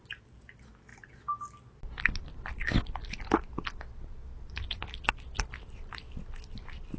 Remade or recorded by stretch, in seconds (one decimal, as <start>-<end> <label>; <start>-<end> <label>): 0.0-7.0 recorded